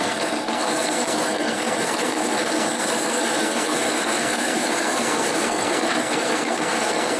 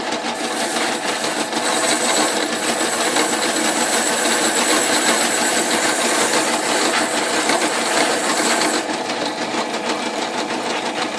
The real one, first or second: second